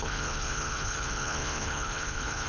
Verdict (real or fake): fake